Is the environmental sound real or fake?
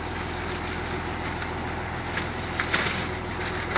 real